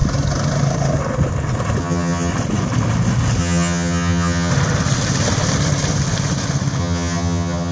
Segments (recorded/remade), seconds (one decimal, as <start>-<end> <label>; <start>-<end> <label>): 0.0-1.8 recorded; 1.8-2.3 remade; 2.3-3.4 recorded; 3.4-4.5 remade; 4.5-6.8 recorded; 6.8-7.7 remade